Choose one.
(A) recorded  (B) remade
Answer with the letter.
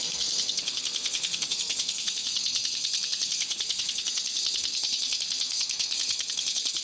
B